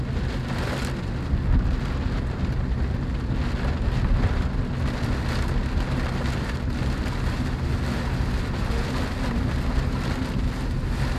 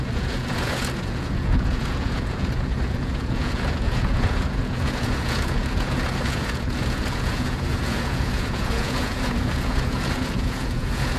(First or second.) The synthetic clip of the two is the second